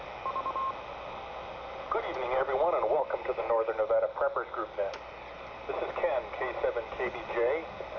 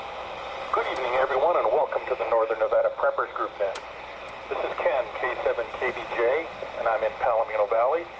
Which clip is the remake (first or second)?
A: second